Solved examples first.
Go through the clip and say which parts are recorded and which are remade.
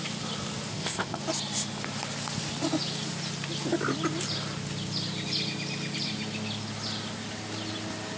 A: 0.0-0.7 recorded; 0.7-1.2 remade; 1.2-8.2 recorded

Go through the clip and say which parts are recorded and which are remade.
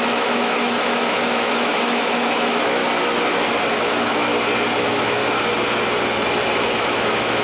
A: 0.0-2.8 remade; 2.8-3.7 recorded; 3.7-4.3 remade; 4.3-4.8 recorded; 4.8-5.2 remade; 5.2-6.6 recorded; 6.6-7.4 remade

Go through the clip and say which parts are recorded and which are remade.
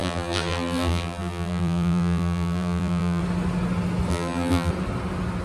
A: 0.0-3.2 remade; 3.2-4.1 recorded; 4.1-4.7 remade; 4.7-5.4 recorded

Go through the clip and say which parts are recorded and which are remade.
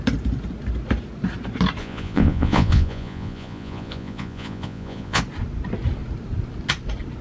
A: 0.0-1.8 recorded; 1.8-5.2 remade; 5.2-7.2 recorded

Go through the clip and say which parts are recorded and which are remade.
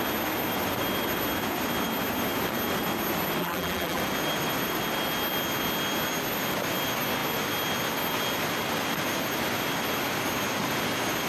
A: 0.0-3.4 recorded; 3.4-4.0 remade; 4.0-11.3 recorded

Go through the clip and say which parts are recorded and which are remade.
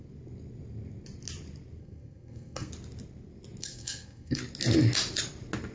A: 0.0-1.8 recorded; 1.8-2.7 remade; 2.7-3.6 recorded; 3.6-4.4 remade; 4.4-5.7 recorded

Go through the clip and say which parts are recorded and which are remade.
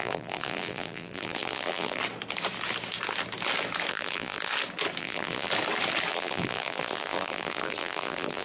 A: 0.0-2.0 remade; 2.0-3.9 recorded; 3.9-4.5 remade; 4.5-5.0 recorded; 5.0-5.5 remade; 5.5-6.1 recorded; 6.1-8.4 remade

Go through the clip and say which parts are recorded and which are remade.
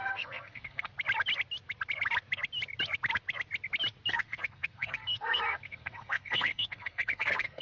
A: 0.0-0.9 remade; 0.9-4.1 recorded; 4.1-7.6 remade